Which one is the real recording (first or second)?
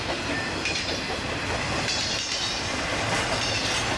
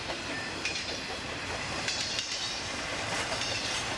first